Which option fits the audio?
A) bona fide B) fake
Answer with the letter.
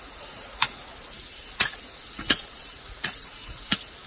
B